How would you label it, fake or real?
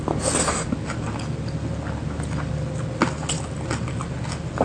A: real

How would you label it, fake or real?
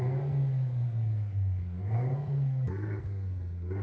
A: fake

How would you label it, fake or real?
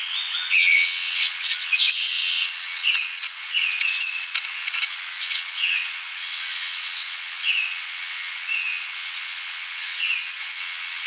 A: fake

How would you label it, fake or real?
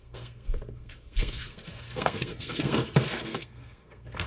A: fake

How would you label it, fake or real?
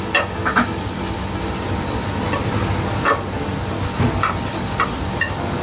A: real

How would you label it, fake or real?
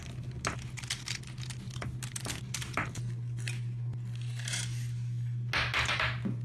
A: real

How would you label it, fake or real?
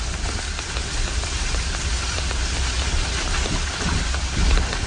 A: real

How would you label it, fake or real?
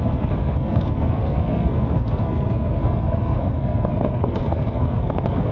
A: fake